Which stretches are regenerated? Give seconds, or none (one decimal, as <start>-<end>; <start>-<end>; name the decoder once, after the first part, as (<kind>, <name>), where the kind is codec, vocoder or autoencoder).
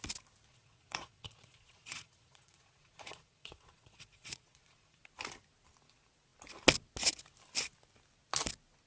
0.5-5.0 (vocoder, Vocos)